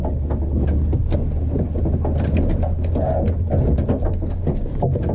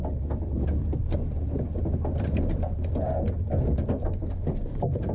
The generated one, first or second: second